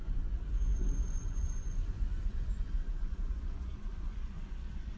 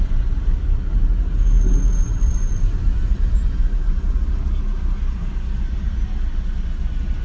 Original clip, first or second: second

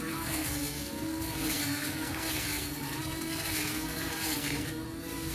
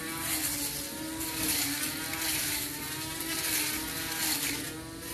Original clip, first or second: second